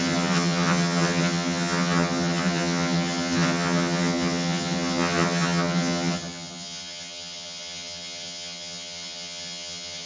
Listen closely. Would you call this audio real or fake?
fake